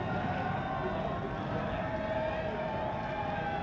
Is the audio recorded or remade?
recorded